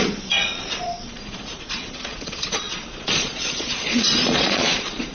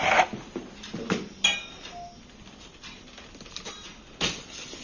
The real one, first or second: second